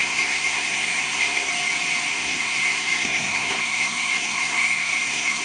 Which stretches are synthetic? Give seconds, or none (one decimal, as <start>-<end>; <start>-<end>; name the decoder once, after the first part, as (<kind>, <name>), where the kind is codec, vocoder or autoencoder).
0.0-1.5 (codec, SNAC); 2.1-5.4